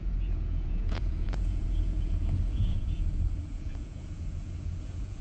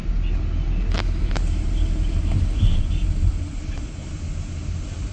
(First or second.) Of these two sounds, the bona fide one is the second